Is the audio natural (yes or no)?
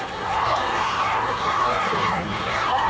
no